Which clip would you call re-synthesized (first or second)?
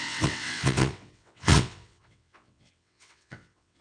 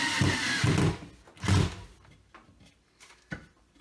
first